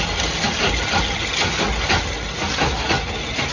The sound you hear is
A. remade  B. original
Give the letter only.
B